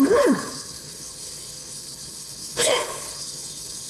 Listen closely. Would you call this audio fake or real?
fake